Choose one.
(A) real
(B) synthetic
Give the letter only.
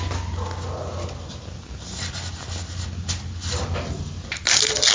A